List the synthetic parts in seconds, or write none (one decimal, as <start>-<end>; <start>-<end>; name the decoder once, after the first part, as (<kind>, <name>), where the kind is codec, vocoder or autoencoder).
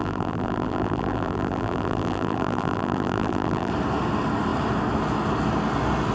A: 0.0-3.7 (vocoder, BigVGAN v2)